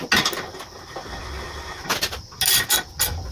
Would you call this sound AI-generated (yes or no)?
no